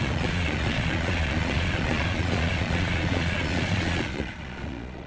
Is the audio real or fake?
fake